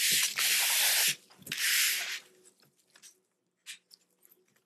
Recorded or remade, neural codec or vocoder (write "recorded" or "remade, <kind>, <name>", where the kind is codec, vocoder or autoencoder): recorded